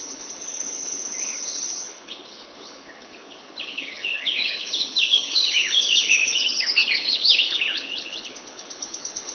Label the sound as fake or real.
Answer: fake